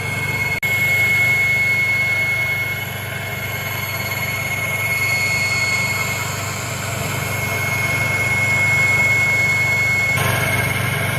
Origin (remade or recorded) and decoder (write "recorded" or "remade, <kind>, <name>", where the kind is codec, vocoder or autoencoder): recorded